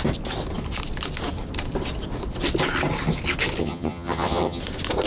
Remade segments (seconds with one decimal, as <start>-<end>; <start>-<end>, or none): 3.6-4.6